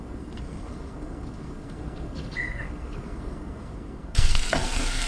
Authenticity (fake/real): fake